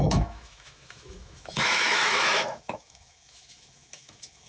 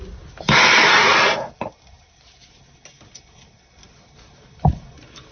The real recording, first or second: second